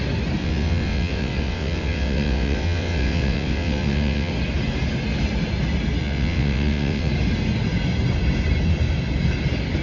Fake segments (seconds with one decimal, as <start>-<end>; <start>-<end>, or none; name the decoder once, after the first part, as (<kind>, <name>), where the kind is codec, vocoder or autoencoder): 0.4-4.3 (vocoder, WaveNeXt); 6.0-7.1